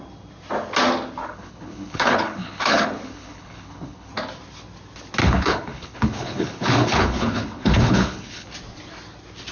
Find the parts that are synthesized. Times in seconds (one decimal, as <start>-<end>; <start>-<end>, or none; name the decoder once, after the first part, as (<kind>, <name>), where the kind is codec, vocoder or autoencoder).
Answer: 1.2-4.1 (codec, HILCodec); 5.2-8.5